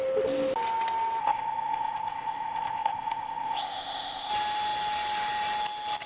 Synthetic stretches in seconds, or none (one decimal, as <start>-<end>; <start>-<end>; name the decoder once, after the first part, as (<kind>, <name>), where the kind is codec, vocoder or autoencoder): 1.2-4.3 (codec, ZipCodec)